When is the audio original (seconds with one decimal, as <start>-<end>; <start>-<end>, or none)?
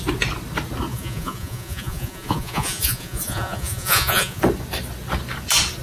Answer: 0.0-0.9; 4.4-5.8